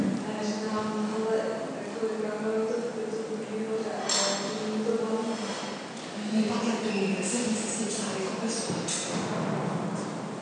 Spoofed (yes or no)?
no